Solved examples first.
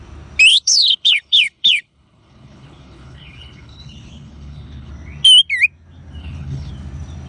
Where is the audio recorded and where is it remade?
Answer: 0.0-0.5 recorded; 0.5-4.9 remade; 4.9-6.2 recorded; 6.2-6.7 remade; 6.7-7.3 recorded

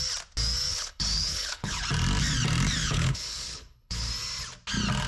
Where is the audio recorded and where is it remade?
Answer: 0.0-0.7 recorded; 0.7-1.8 remade; 1.8-2.8 recorded; 2.8-4.1 remade; 4.1-5.1 recorded

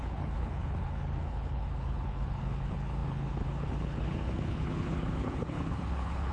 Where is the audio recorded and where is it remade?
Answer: 0.0-6.3 remade

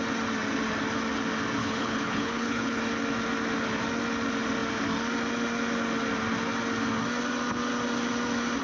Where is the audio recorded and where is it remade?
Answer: 0.0-1.6 recorded; 1.6-2.8 remade; 2.8-8.6 recorded

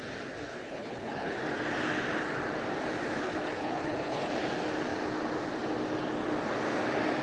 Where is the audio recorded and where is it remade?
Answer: 0.0-0.5 recorded; 0.5-1.3 remade; 1.3-3.2 recorded; 3.2-4.3 remade; 4.3-7.2 recorded

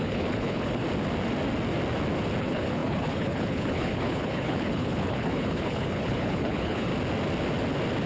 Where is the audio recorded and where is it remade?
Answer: 0.0-0.8 remade; 0.8-2.4 recorded; 2.4-6.9 remade; 6.9-8.1 recorded

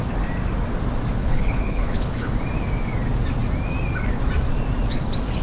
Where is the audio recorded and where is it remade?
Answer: 0.0-1.2 recorded; 1.2-2.3 remade; 2.3-5.4 recorded